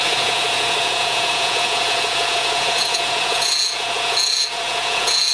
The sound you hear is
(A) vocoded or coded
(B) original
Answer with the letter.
A